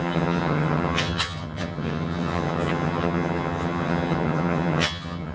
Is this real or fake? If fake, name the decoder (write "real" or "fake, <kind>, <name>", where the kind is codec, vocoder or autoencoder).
fake, vocoder, HiFi-GAN